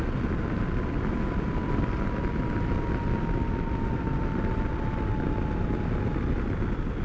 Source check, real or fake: real